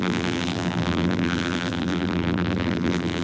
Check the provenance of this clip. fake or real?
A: fake